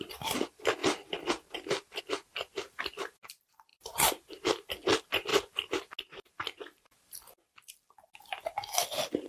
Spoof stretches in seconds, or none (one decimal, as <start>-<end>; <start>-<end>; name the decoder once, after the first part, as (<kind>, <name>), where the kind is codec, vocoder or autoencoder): 3.7-4.7 (vocoder, BigVGAN v2); 5.3-5.9